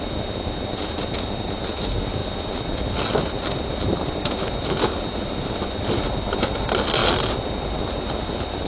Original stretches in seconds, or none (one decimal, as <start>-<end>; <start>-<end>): 0.0-8.7